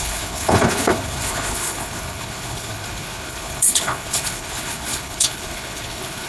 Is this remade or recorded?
remade